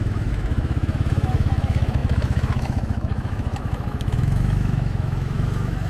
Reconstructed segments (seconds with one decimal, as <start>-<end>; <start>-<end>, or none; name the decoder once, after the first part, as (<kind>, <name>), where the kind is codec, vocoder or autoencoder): 0.0-5.9 (autoencoder, DAC-VAE)